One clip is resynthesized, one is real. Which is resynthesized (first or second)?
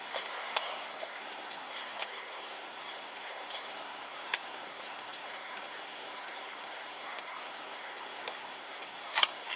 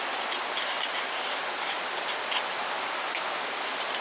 first